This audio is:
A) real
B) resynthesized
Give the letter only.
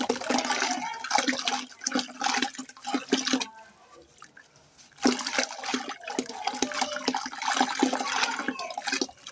A